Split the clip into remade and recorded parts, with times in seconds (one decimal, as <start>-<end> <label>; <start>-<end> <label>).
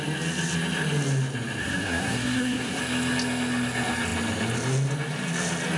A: 0.0-1.6 recorded; 1.6-2.8 remade; 2.8-5.8 recorded